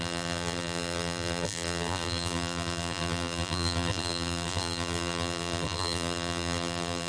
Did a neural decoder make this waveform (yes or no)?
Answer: yes